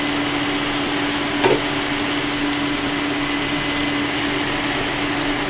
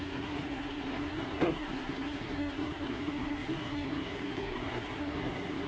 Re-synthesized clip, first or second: second